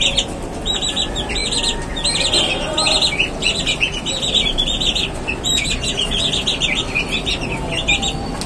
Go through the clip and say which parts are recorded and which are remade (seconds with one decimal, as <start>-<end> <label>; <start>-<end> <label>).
0.0-8.5 recorded